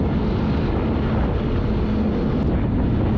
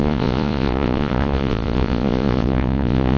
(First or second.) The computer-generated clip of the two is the second